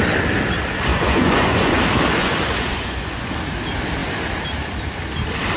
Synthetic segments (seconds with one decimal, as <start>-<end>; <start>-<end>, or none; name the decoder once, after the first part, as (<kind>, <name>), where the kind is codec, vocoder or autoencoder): 0.9-1.8 (vocoder, Vocos); 2.2-3.3